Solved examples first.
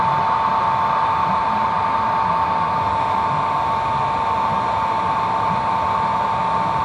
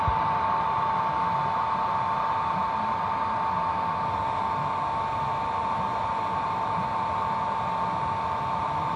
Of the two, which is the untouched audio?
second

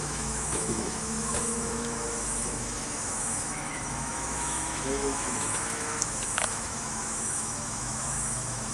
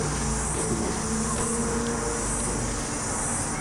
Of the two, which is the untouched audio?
second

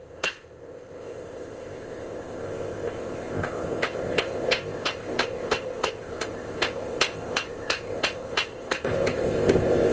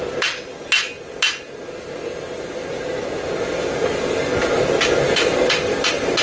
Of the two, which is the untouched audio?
second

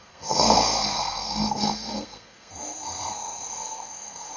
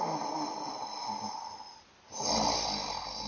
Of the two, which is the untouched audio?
second